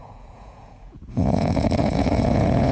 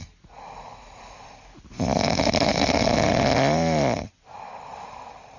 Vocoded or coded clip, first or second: first